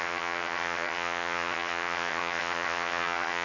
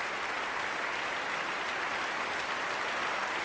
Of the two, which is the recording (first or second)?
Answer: second